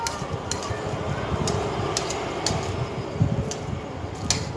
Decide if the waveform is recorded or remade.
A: recorded